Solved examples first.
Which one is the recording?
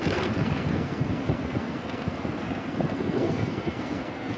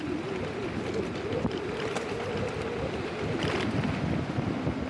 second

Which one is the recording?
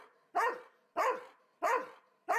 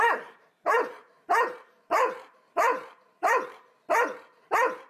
first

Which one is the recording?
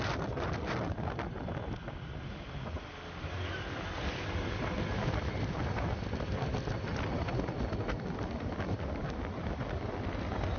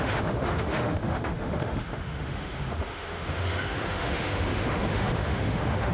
first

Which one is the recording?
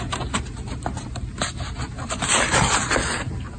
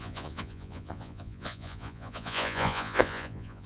first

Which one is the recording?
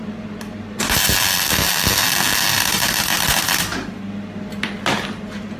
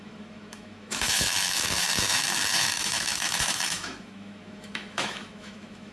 first